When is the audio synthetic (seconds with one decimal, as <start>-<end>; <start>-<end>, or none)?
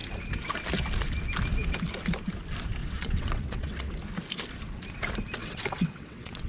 2.8-3.9; 5.4-6.5